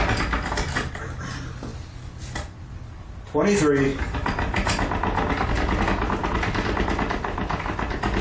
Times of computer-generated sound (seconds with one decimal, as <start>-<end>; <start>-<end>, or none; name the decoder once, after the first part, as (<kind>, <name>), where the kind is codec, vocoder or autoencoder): none